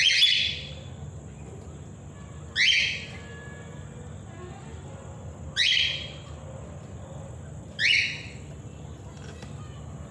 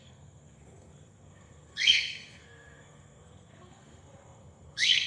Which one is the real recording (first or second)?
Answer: first